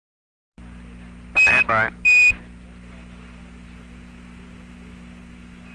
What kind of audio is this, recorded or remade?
recorded